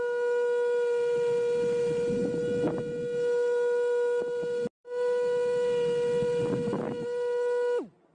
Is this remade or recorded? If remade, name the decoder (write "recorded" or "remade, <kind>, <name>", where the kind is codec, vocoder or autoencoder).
recorded